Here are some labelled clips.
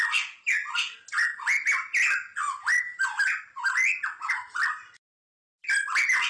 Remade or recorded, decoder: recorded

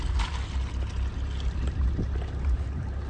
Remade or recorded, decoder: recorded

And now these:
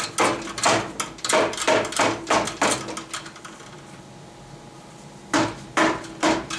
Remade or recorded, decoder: recorded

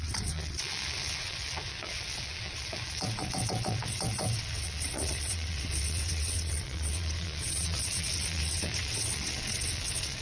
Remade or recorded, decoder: remade, vocoder, WaveNeXt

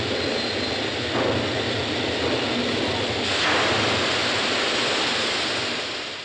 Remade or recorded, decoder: recorded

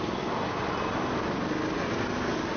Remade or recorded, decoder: recorded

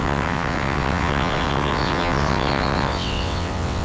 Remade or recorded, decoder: remade, vocoder, WaveNeXt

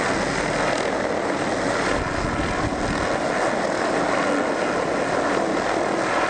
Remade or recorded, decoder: recorded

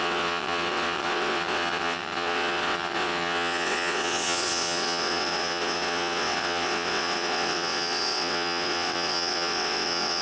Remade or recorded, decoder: remade, vocoder, WaveNeXt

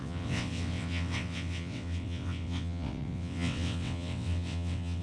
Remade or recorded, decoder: remade, vocoder, WaveNeXt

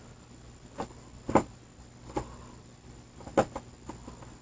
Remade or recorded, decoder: recorded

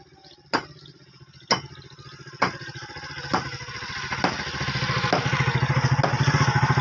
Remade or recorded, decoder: recorded